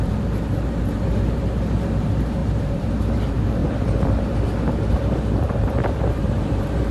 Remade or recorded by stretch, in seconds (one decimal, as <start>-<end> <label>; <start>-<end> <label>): 0.0-3.6 remade; 3.6-4.9 recorded; 4.9-6.9 remade